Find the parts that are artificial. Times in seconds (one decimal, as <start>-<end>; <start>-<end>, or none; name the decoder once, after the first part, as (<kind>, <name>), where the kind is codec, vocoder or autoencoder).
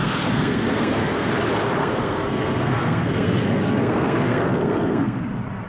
0.0-1.3 (codec, SNAC); 1.8-5.2